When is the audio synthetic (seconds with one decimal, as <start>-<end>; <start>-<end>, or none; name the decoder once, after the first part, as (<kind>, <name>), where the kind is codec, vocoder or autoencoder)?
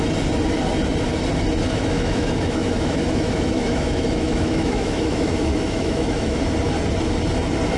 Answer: 1.7-6.4 (autoencoder, DAC-VAE)